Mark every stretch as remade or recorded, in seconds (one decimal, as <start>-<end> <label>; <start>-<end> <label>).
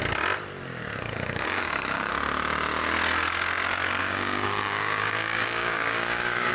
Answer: 0.0-0.7 recorded; 0.7-2.1 remade; 2.1-4.0 recorded; 4.0-6.5 remade